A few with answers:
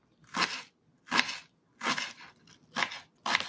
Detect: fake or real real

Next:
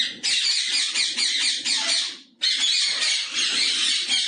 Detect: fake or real real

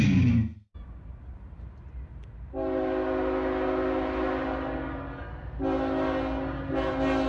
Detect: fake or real real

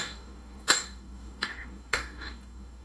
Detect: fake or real fake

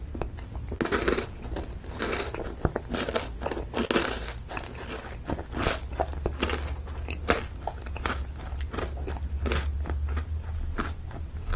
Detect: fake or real real